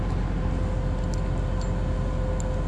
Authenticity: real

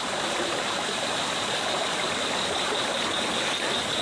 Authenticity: real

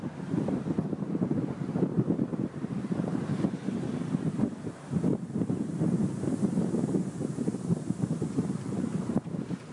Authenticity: fake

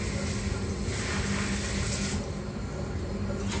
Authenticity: real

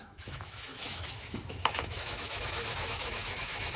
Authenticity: fake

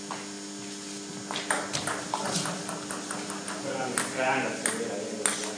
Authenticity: real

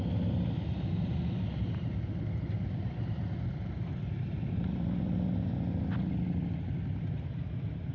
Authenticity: real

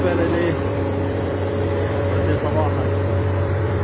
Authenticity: fake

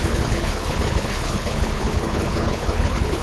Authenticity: fake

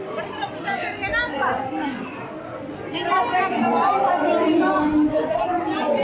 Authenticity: real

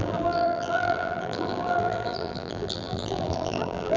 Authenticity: fake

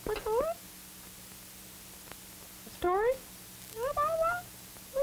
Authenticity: real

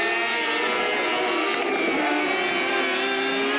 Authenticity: real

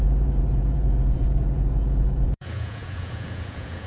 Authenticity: fake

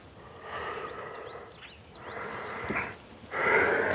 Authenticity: real